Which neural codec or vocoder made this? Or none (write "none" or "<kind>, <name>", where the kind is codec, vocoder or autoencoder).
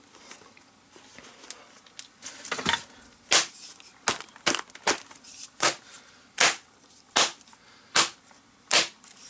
none